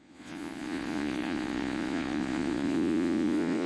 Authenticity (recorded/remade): remade